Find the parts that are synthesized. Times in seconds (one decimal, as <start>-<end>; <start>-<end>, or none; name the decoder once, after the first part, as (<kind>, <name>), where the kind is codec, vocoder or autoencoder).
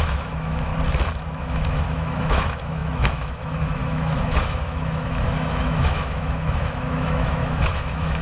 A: 0.0-0.7 (autoencoder, DAC-VAE); 1.4-8.2